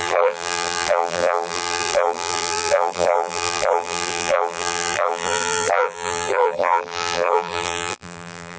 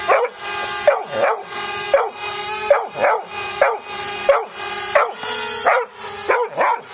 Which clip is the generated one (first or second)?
first